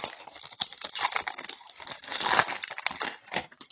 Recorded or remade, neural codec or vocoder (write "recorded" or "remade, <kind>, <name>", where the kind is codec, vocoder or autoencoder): recorded